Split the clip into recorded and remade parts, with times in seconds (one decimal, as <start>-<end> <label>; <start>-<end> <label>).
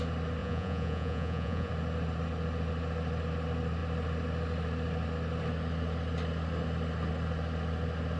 0.0-0.4 recorded; 0.4-1.7 remade; 1.7-8.2 recorded